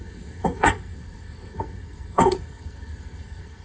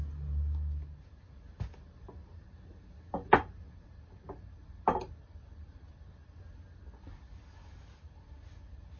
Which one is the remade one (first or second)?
first